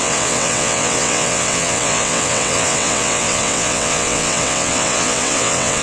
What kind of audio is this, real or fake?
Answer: fake